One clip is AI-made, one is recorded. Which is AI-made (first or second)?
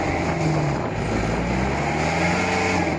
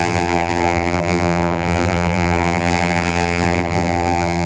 second